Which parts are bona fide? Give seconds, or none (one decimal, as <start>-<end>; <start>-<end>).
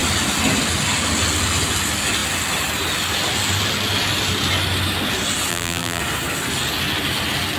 0.0-5.5; 6.0-7.6